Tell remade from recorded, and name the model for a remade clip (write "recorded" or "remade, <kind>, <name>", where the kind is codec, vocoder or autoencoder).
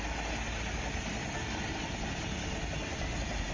recorded